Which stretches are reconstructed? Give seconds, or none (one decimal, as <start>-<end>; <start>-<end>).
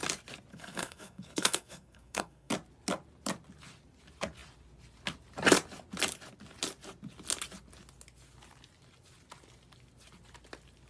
0.5-2.5